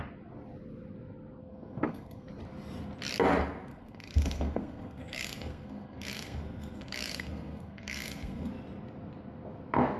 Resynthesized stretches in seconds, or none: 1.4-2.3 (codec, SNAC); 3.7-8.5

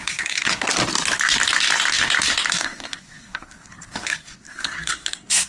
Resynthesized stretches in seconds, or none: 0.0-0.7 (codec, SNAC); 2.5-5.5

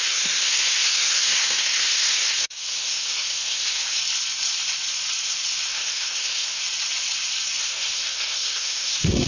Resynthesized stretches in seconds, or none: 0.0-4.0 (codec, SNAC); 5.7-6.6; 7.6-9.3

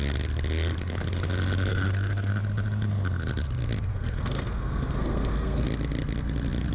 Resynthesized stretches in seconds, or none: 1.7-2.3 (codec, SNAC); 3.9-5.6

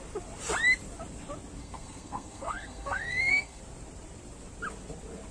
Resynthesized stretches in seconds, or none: 1.6-3.6 (codec, SNAC)